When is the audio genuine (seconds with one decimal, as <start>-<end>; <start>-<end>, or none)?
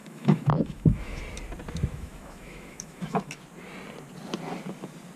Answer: 1.2-1.9; 3.4-5.2